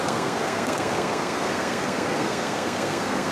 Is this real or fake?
fake